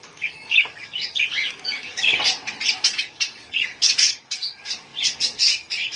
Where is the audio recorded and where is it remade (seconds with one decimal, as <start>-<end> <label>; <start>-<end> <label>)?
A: 0.0-2.1 remade; 2.1-2.7 recorded; 2.7-6.0 remade